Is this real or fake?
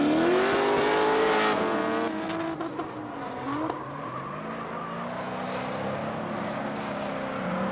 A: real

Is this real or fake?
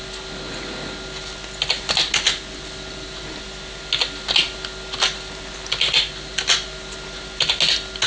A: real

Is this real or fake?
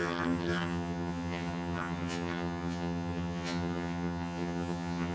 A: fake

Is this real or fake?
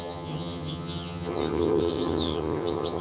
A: fake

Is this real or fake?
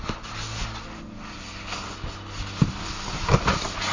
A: real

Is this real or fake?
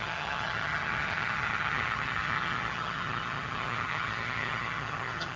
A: fake